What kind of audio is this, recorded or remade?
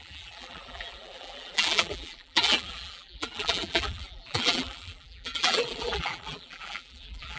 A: remade